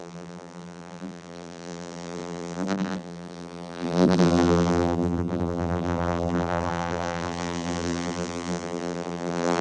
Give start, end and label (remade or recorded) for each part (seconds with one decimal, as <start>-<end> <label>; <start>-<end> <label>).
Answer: 0.0-9.6 remade